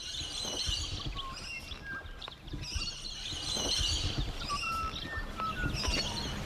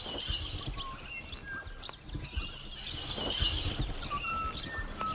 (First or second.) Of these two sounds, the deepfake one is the first